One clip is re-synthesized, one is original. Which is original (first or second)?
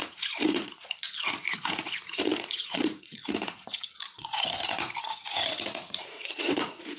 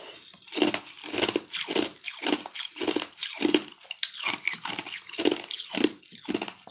second